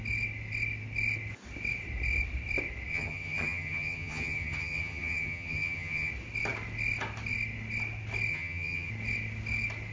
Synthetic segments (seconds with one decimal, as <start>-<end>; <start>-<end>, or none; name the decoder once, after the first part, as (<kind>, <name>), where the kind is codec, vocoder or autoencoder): 2.9-6.1 (vocoder, HiFi-GAN); 8.3-8.9